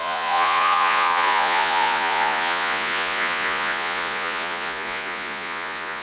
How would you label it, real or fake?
fake